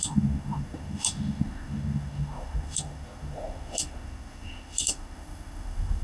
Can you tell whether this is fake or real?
fake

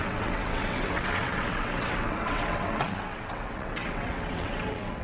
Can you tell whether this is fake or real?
fake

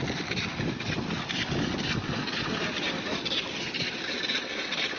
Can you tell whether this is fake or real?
real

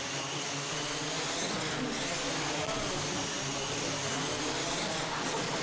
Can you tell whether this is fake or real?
real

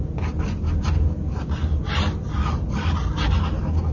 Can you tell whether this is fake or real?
real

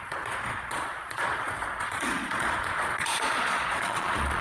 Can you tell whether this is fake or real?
fake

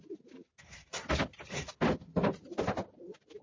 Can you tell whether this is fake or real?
real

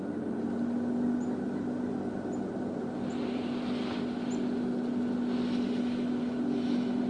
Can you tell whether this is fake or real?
real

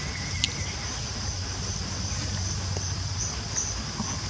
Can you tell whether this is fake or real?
real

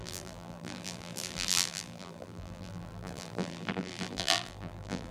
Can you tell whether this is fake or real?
fake